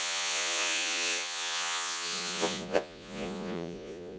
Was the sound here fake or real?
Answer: fake